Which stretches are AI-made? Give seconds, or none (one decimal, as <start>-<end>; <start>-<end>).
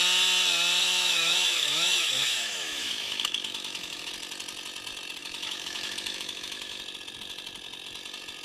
0.8-4.1; 5.2-6.8